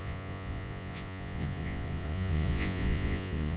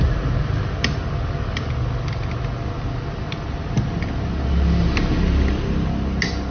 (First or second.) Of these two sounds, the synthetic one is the first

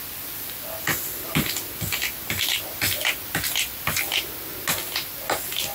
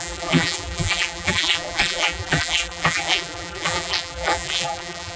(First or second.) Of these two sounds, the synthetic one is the second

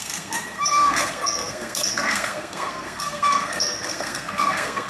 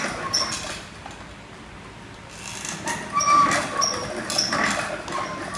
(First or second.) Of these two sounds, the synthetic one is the first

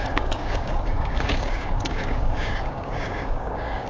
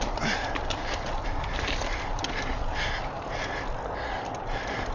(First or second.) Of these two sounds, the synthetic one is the first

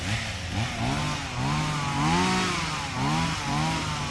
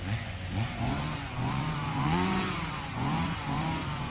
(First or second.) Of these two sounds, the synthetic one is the second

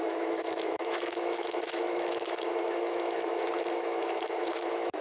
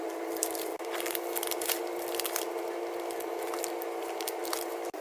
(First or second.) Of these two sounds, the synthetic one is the first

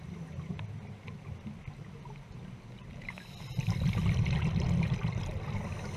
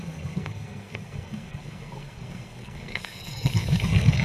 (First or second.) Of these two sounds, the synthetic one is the second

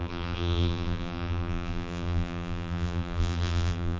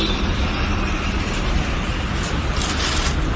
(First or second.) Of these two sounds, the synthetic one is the first